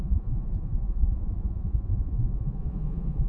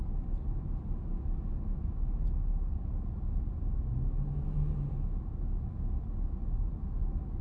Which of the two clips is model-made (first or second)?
first